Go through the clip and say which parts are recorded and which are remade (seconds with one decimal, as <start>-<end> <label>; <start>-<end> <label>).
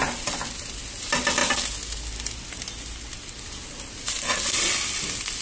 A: 0.0-5.4 recorded